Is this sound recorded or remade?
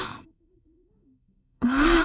remade